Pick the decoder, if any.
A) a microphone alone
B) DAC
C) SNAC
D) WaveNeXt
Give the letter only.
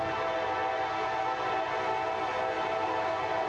A